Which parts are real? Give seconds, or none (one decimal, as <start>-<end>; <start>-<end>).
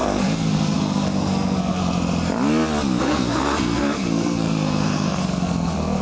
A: 1.8-3.0